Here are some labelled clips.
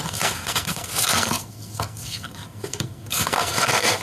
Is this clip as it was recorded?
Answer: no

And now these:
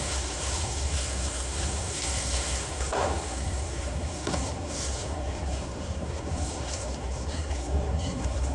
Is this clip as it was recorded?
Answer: no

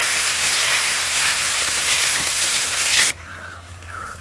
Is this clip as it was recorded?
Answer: no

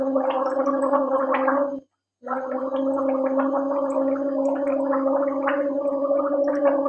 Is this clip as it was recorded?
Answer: yes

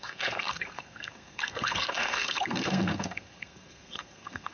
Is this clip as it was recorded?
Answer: no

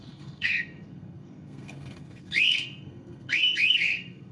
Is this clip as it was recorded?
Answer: no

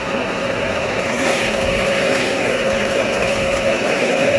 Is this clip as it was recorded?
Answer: no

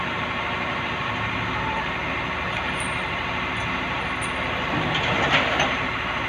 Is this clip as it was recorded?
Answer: yes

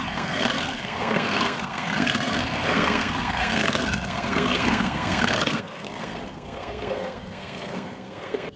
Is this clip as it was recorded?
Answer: no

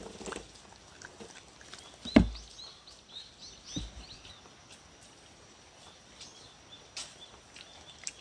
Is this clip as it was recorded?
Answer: yes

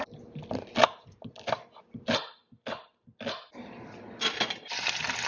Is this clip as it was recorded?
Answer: yes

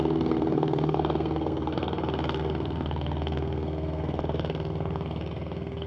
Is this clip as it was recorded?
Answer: no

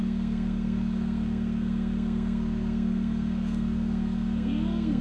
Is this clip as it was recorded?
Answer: no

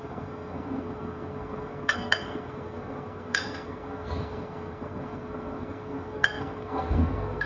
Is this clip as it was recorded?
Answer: no